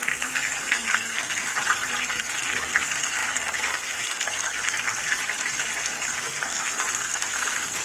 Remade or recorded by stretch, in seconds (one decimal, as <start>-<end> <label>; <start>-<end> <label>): 0.0-1.5 remade; 1.5-2.0 recorded; 2.0-5.2 remade; 5.2-5.8 recorded; 5.8-7.8 remade